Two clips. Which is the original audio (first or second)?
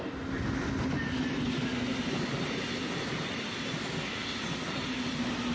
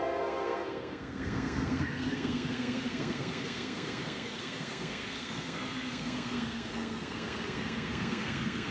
first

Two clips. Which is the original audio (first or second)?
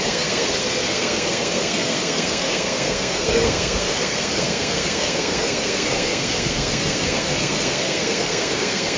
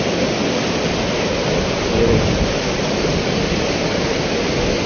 second